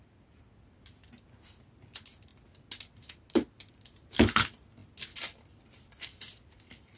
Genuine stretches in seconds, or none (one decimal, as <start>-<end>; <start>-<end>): 0.0-7.0